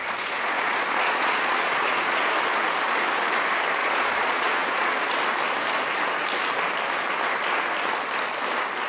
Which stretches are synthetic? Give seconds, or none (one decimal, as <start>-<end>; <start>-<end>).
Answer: 0.0-2.2; 3.8-5.1